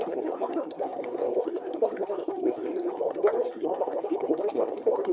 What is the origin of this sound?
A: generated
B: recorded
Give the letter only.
A